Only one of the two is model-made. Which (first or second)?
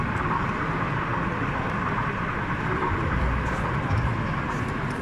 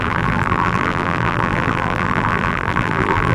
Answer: second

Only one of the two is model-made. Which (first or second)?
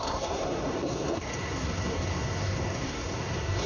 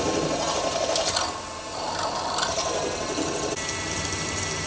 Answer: first